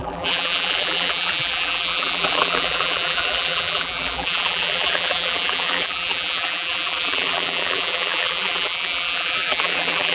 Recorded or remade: remade